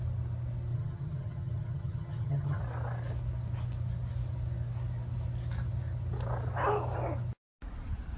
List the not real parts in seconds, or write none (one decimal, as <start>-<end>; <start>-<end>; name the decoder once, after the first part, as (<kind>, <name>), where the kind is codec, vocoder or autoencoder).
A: 0.7-2.6 (vocoder, HiFi-GAN)